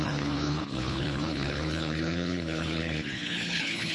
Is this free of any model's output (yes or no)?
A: no